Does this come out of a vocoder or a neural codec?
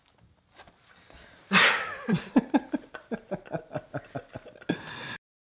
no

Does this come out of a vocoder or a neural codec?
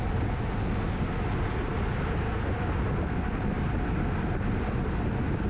no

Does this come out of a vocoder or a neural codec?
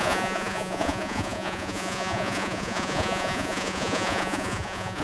yes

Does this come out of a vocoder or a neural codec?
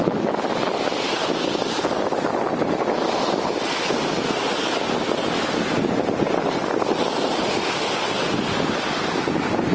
no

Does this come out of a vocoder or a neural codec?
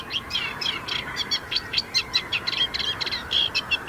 no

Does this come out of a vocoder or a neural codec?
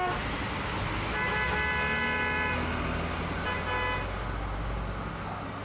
no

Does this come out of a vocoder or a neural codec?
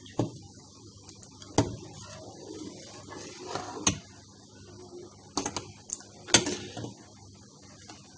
no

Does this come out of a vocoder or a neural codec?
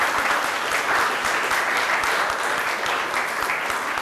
no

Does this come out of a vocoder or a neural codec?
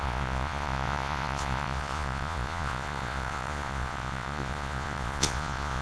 yes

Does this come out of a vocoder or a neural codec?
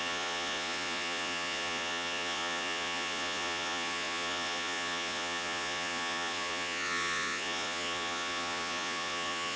yes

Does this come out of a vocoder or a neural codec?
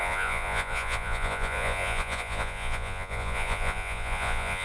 yes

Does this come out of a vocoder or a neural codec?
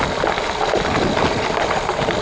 no